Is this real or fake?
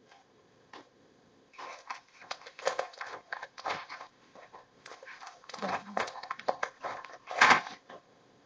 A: fake